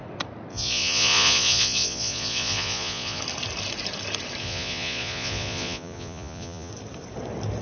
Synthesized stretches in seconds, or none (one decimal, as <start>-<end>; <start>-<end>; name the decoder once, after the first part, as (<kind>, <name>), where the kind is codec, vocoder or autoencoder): 0.5-3.2 (vocoder, Vocos); 4.4-6.7

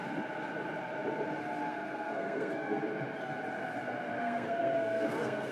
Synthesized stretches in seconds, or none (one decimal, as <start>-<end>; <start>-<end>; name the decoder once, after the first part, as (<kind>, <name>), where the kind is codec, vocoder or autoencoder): 1.7-2.8 (codec, SNAC); 4.2-5.5

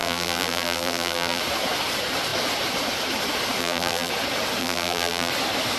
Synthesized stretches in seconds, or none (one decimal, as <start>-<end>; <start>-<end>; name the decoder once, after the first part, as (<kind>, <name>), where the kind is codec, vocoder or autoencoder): 0.0-1.4 (vocoder, BigVGAN v2); 3.6-4.1; 4.6-5.3

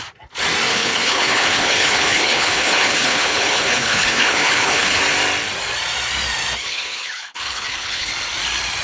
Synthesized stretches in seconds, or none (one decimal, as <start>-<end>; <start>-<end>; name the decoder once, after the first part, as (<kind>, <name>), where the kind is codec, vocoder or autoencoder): 0.7-5.0 (codec, HILCodec); 6.6-8.1

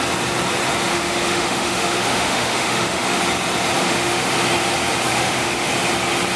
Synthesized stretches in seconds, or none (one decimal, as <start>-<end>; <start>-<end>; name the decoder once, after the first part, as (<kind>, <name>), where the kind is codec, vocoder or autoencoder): 0.9-3.2 (autoencoder, DAC-VAE); 3.8-4.3; 5.1-5.7